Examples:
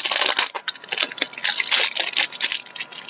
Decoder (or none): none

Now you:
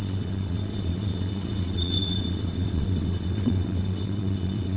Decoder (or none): vocoder, WaveNeXt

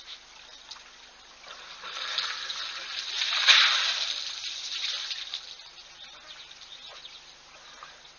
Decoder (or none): none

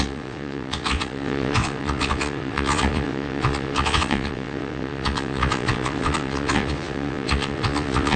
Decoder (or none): vocoder, WaveNeXt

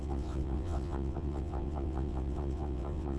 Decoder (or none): vocoder, WaveNeXt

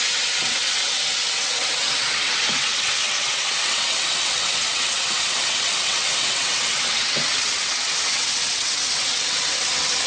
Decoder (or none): vocoder, WaveNeXt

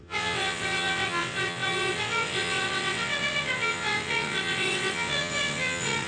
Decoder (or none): vocoder, WaveNeXt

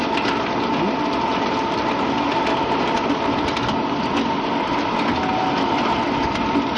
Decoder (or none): none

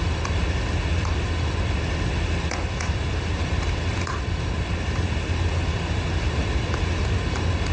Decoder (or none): none